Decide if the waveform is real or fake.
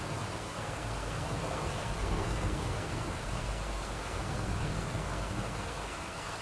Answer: fake